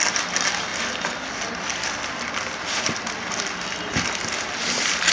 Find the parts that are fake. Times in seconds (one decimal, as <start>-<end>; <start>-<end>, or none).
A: 0.7-3.8